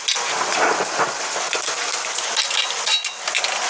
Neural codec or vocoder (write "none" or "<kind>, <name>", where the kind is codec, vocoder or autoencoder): none